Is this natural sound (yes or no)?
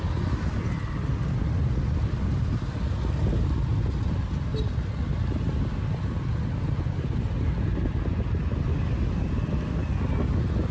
yes